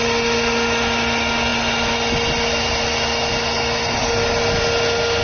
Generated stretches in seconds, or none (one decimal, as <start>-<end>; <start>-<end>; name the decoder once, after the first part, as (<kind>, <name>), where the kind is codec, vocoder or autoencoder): none